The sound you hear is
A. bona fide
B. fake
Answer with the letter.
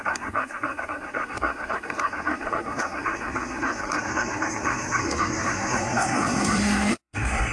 B